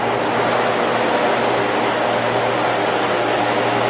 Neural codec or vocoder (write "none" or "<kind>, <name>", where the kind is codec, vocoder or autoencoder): none